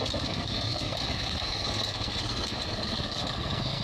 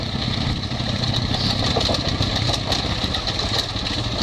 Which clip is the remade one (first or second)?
first